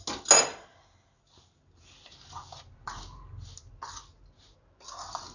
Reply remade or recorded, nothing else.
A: recorded